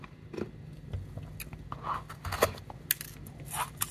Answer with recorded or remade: recorded